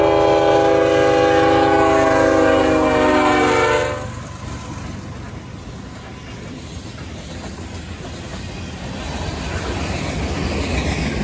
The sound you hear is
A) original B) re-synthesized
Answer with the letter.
A